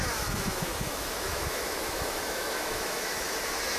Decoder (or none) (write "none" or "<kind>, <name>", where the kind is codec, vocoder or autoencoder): autoencoder, DAC-VAE